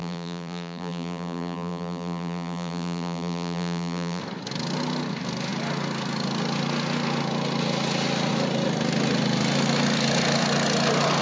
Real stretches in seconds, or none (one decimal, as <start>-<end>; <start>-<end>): 4.2-11.2